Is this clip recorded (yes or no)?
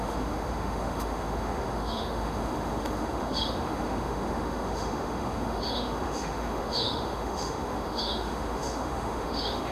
no